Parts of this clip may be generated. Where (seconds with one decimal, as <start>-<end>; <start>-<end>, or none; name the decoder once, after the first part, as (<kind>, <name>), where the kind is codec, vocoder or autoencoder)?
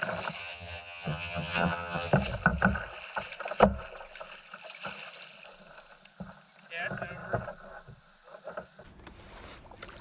0.4-2.1 (vocoder, HiFi-GAN)